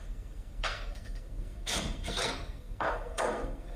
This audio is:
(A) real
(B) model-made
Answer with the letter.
B